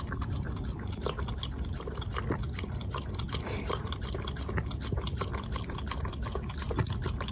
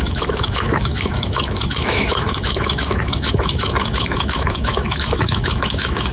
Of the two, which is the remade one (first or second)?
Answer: second